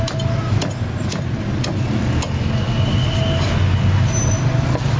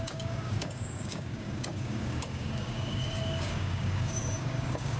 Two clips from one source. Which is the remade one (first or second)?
second